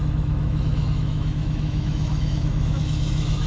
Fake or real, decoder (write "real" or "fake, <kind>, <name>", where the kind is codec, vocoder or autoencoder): fake, autoencoder, DAC-VAE